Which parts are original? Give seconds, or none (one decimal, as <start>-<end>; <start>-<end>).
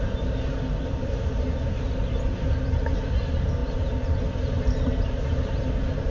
0.0-6.1